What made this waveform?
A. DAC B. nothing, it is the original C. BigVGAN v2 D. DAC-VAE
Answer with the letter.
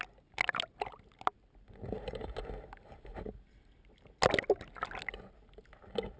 B